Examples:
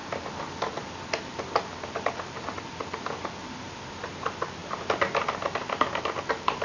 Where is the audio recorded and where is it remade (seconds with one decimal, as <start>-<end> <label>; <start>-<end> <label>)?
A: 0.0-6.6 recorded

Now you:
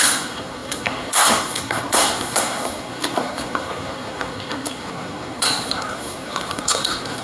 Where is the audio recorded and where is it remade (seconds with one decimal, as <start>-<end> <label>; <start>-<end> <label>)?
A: 0.0-7.2 remade

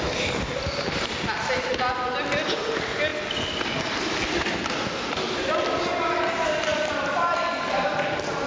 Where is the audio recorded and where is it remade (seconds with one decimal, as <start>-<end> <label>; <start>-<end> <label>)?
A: 0.0-8.5 recorded